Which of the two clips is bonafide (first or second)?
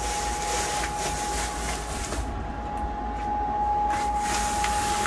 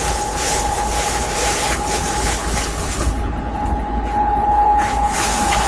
first